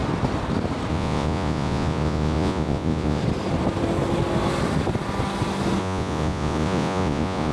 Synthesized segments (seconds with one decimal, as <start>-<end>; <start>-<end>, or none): 0.9-3.2; 5.8-7.5